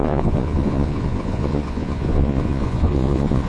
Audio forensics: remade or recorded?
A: remade